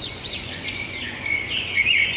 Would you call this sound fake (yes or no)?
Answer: yes